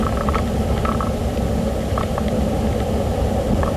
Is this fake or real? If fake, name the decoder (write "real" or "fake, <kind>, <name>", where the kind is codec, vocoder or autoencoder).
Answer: real